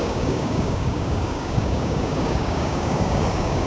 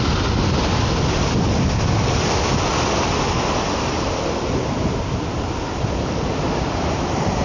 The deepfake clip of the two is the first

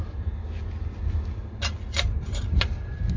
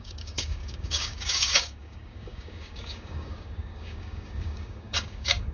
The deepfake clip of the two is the second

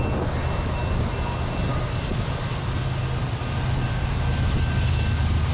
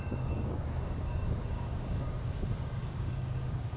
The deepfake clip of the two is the second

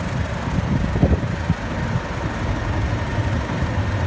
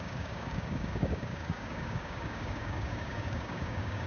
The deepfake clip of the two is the second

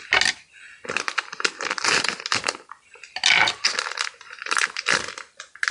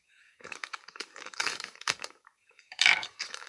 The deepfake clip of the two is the second